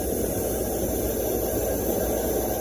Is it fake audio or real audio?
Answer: real